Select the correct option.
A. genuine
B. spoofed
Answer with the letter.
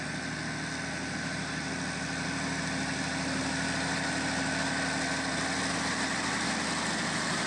A